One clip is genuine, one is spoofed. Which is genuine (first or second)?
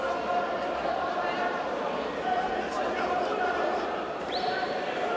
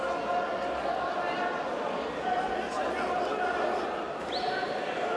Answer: second